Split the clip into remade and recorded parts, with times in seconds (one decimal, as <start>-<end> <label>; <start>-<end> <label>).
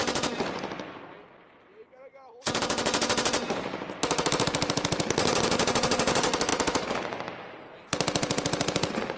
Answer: 0.0-9.2 recorded